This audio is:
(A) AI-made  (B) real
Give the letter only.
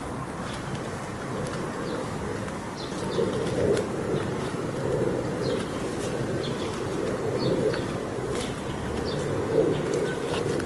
A